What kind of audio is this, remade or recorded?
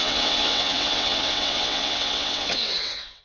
remade